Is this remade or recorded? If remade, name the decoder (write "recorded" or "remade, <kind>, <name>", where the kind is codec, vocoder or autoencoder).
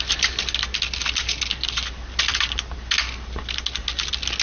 recorded